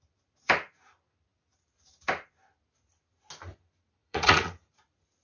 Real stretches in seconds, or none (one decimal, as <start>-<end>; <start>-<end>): 0.0-4.0; 4.7-5.2